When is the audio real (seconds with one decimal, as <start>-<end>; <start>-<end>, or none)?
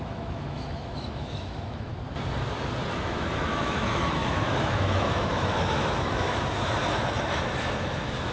1.9-2.9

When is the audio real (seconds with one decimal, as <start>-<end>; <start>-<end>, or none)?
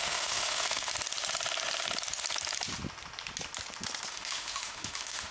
0.9-4.1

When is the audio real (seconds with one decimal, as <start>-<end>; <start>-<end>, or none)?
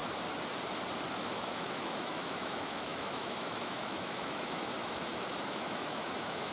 0.0-1.1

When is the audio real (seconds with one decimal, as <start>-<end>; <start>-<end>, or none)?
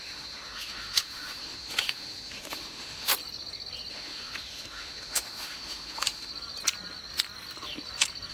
3.1-3.9; 6.3-8.3